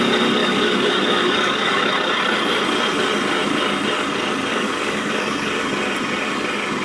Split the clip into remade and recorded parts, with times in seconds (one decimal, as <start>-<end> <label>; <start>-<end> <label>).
0.0-0.4 recorded; 0.4-1.9 remade; 1.9-4.5 recorded; 4.5-5.3 remade; 5.3-6.8 recorded